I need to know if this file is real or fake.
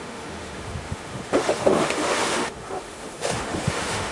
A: fake